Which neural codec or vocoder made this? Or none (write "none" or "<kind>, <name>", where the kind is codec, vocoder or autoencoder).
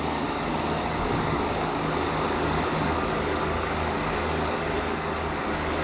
codec, DAC